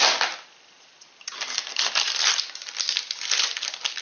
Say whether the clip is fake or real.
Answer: real